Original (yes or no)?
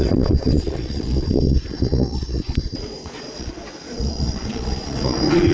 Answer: no